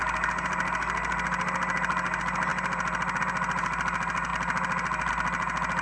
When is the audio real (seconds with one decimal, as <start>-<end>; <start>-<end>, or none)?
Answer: 0.0-5.8